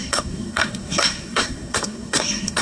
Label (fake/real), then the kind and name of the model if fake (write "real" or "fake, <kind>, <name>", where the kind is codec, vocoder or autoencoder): fake, codec, SNAC